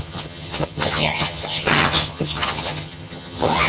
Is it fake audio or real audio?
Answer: fake